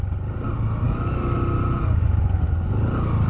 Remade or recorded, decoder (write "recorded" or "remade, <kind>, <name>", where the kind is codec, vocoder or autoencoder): recorded